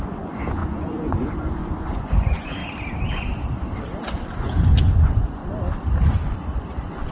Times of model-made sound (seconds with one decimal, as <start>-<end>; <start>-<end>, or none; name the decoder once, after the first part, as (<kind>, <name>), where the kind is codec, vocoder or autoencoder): 0.0-2.6 (vocoder, Vocos); 4.0-5.4; 6.1-7.1